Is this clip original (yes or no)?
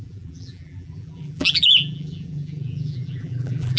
no